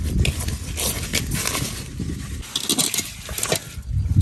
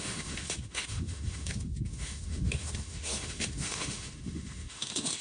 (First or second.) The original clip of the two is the first